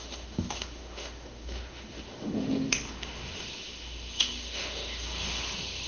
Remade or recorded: remade